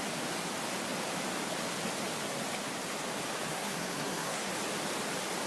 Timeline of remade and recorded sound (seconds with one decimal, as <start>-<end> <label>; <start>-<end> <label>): 0.0-3.5 recorded; 3.5-4.5 remade; 4.5-5.5 recorded